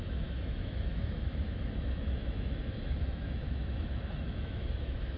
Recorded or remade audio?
remade